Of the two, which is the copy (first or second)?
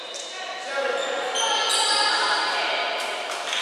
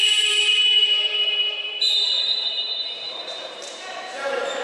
second